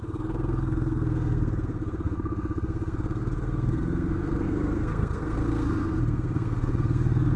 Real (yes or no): no